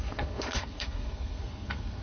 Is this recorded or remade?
remade